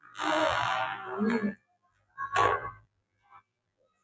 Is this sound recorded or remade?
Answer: remade